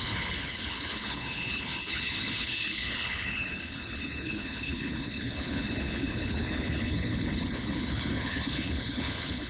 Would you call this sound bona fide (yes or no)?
no